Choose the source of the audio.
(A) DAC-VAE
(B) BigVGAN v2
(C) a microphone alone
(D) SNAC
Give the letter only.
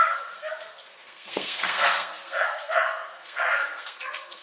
D